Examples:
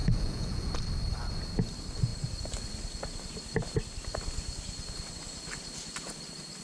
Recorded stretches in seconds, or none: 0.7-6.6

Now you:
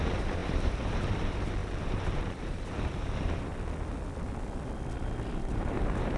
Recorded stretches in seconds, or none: 3.5-5.4

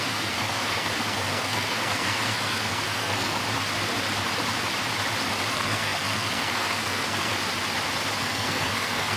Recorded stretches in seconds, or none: 3.4-5.5; 7.3-8.2